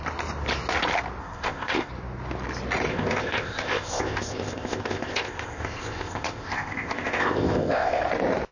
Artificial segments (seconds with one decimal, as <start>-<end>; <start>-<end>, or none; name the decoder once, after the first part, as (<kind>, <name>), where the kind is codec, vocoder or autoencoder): 1.2-1.9 (codec, ZipCodec); 2.9-8.0

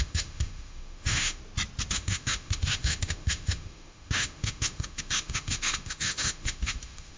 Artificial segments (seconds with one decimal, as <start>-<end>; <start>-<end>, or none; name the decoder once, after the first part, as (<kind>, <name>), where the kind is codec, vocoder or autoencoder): 0.0-1.4 (autoencoder, DAC-VAE); 1.9-7.2

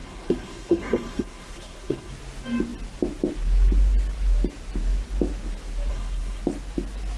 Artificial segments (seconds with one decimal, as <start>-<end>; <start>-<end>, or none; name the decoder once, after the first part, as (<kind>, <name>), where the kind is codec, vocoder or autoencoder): 0.0-2.1 (codec, SNAC); 5.9-6.4

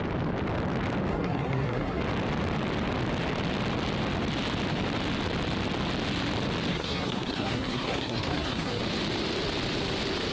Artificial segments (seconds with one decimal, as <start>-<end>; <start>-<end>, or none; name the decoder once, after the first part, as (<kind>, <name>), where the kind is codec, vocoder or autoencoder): 1.1-2.0 (codec, SNAC); 6.7-8.8